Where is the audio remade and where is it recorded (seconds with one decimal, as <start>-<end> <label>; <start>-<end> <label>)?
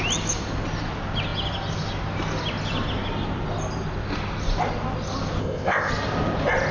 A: 0.0-5.4 recorded; 5.4-5.9 remade; 5.9-6.7 recorded